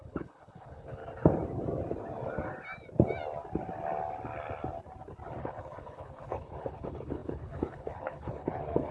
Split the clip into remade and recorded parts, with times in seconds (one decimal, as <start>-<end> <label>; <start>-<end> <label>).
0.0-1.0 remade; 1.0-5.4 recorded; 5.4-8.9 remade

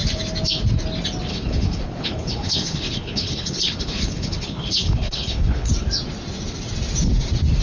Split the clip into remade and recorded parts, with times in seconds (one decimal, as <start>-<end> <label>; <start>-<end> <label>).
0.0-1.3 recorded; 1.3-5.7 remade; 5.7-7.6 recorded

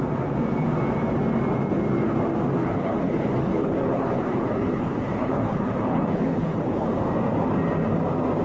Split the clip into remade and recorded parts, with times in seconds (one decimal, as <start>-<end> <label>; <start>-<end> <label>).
0.0-2.6 recorded; 2.6-7.0 remade; 7.0-8.4 recorded

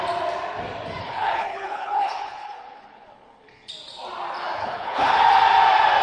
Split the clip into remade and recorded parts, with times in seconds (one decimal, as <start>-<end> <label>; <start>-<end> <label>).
0.0-1.0 recorded; 1.0-3.7 remade; 3.7-4.6 recorded; 4.6-5.1 remade; 5.1-6.0 recorded